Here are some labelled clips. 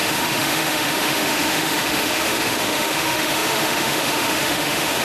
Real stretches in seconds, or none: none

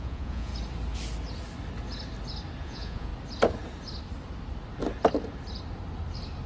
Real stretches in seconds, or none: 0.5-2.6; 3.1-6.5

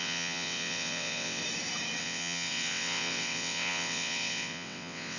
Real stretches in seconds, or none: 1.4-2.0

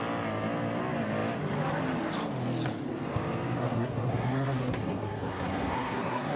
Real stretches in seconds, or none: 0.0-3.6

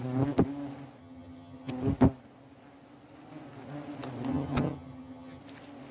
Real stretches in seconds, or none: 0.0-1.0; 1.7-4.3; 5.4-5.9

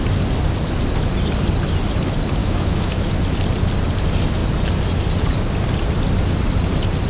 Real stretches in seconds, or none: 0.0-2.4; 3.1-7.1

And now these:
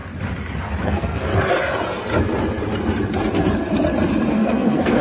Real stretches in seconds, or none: 0.0-0.8; 1.3-4.3

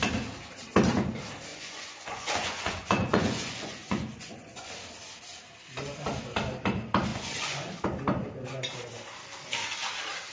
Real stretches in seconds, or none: 0.0-1.5; 4.7-7.1; 7.8-10.3